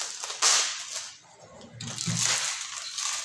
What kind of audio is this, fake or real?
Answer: real